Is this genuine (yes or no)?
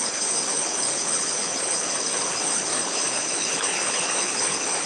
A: no